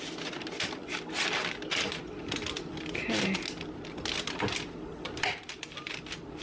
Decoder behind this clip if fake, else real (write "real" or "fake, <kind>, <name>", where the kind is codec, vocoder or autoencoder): real